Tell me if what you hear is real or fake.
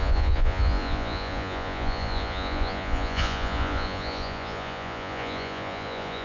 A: fake